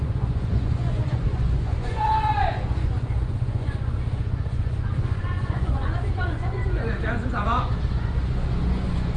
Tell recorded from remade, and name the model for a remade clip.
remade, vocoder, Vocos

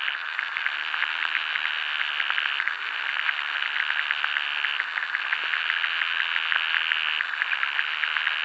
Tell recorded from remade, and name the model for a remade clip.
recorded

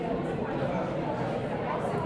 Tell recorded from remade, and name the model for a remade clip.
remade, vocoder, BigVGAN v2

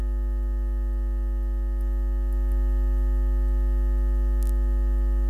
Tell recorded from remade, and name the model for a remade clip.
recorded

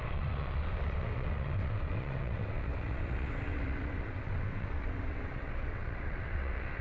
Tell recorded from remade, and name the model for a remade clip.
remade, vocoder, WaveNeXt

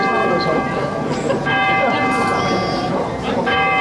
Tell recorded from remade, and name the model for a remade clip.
remade, vocoder, BigVGAN v2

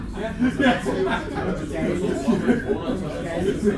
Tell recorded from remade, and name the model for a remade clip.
remade, vocoder, BigVGAN v2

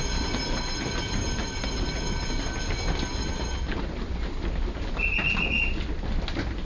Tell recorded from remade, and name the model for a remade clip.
recorded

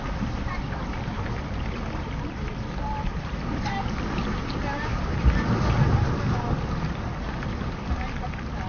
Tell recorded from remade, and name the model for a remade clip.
recorded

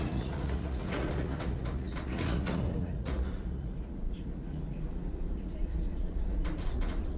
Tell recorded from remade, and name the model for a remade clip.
remade, vocoder, Vocos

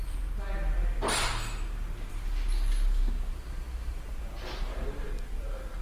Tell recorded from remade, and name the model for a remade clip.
recorded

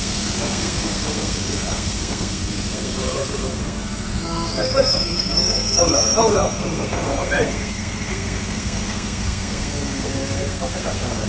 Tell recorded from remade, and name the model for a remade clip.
remade, codec, SNAC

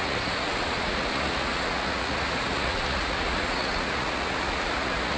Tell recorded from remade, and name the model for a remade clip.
remade, vocoder, Vocos